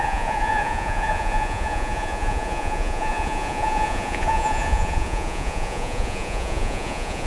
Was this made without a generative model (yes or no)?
no